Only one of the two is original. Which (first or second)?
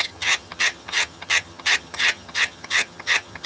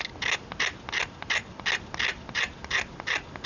second